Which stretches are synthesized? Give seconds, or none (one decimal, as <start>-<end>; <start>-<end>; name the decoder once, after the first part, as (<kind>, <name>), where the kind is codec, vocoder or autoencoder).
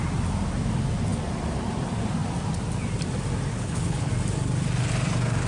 3.5-4.1 (codec, HILCodec)